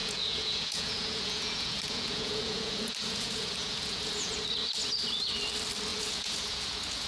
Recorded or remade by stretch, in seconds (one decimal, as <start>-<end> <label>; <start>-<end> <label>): 0.0-4.3 remade; 4.3-5.9 recorded; 5.9-7.1 remade

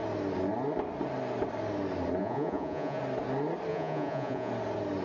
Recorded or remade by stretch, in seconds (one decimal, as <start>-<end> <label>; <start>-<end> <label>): 0.0-2.2 recorded; 2.2-3.0 remade; 3.0-3.7 recorded; 3.7-4.5 remade; 4.5-5.0 recorded

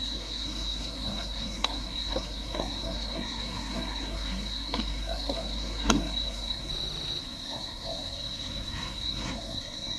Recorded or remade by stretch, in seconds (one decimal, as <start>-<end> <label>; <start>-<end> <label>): 0.0-6.7 remade; 6.7-7.2 recorded; 7.2-10.0 remade